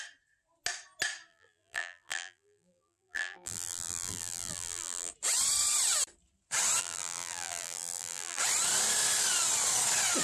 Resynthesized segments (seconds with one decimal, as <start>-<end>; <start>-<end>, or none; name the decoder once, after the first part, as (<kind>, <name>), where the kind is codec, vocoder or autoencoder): 1.3-5.1 (vocoder, BigVGAN v2); 6.8-8.4